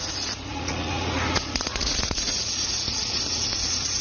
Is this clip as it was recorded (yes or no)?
no